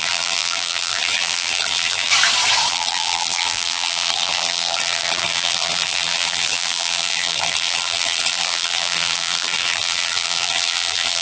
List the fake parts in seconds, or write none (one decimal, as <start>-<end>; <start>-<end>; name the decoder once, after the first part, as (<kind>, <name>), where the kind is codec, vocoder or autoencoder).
0.0-2.1 (vocoder, BigVGAN v2); 2.7-11.2